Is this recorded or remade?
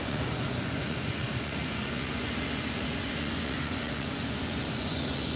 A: remade